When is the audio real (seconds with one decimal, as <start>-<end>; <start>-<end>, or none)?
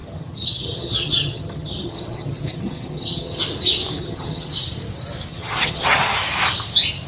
3.4-4.0; 4.5-5.3; 6.2-7.1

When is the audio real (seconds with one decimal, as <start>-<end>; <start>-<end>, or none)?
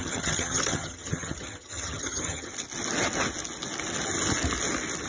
2.5-5.1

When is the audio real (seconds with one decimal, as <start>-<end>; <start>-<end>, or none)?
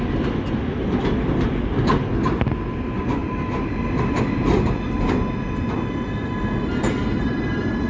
0.0-7.9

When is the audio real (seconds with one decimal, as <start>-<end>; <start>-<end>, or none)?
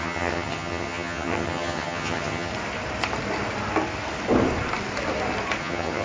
2.5-5.6